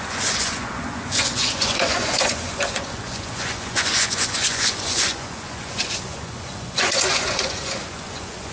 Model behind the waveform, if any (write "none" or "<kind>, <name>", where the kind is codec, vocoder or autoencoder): vocoder, Vocos